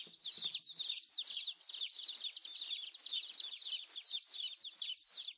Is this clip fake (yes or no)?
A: no